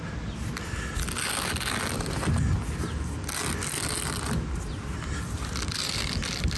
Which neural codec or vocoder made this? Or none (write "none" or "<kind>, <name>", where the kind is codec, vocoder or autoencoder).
none